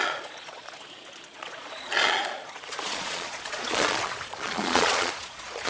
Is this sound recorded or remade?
remade